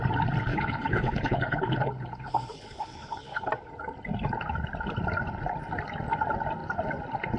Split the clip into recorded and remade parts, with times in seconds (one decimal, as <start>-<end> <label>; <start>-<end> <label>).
0.0-0.5 recorded; 0.5-3.5 remade; 3.5-7.4 recorded